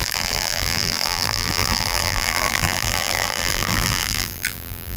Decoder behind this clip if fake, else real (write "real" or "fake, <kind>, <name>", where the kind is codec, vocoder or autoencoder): fake, vocoder, BigVGAN v2